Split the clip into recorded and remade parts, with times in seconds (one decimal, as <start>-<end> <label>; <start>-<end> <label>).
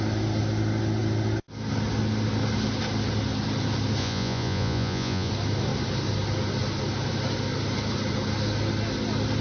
0.0-4.0 recorded; 4.0-5.3 remade; 5.3-9.4 recorded